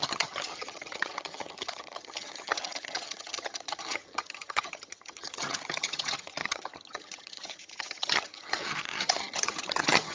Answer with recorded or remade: remade